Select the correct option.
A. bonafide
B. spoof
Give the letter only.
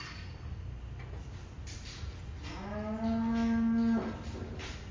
A